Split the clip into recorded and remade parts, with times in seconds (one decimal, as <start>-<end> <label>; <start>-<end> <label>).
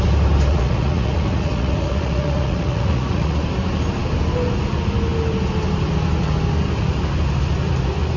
0.0-0.5 recorded; 0.5-3.4 remade; 3.4-8.2 recorded